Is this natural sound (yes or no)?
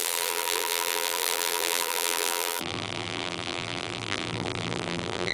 no